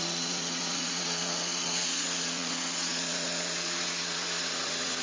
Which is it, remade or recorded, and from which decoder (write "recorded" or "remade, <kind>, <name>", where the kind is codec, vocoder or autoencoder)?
remade, vocoder, Vocos